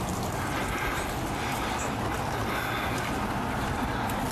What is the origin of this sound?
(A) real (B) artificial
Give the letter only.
A